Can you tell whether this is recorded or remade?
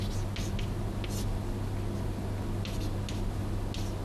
recorded